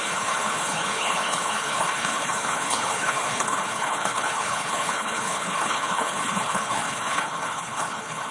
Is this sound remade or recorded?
remade